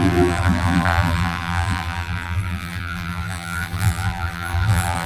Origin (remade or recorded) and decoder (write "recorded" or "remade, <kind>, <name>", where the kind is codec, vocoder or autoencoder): remade, vocoder, BigVGAN v2